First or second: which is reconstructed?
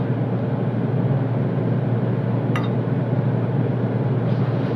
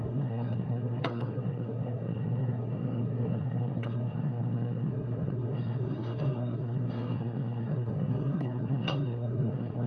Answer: second